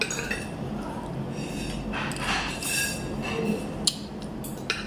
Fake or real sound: real